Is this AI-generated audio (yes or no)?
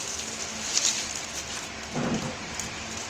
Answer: no